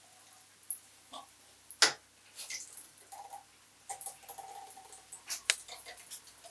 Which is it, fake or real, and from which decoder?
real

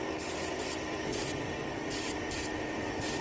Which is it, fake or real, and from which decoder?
real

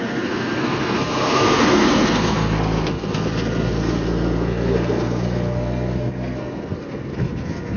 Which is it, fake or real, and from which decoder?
fake, codec, SNAC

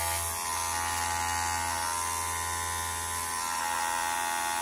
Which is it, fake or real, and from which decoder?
real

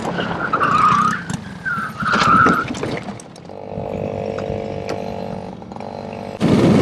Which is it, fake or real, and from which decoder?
real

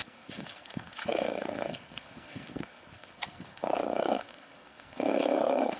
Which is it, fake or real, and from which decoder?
fake, codec, SNAC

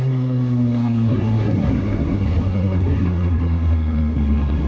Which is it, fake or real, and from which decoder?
fake, codec, SNAC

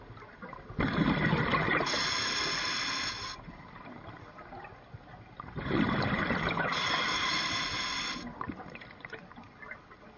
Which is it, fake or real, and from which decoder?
real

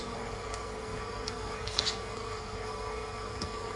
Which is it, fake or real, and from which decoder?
fake, codec, SNAC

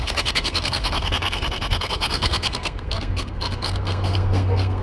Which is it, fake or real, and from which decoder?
fake, codec, SNAC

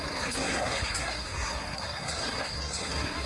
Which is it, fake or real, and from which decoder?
fake, codec, SNAC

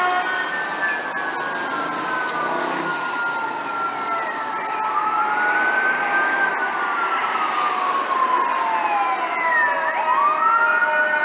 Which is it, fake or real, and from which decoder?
real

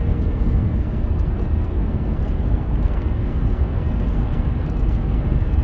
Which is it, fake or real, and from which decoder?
fake, codec, SNAC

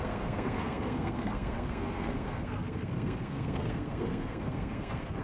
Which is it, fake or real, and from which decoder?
fake, codec, SNAC